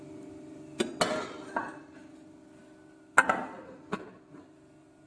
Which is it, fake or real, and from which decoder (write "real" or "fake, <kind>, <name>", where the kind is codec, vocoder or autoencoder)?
real